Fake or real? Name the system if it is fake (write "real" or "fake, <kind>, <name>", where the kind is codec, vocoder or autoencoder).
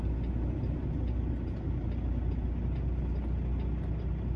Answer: real